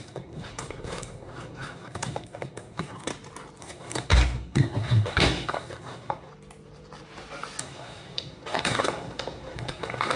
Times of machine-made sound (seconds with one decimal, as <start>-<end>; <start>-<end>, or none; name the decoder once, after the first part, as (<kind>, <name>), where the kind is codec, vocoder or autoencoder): 0.0-3.1 (codec, SNAC); 3.6-6.3; 7.6-10.2